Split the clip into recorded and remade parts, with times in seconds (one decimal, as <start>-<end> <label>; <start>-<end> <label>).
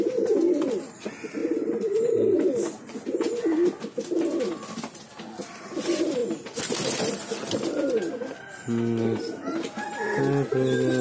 0.0-11.0 recorded